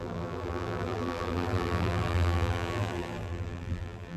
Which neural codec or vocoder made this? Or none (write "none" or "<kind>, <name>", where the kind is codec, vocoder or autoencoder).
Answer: vocoder, BigVGAN v2